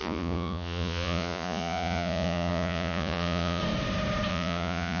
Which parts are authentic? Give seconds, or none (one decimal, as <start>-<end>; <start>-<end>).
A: 3.6-4.3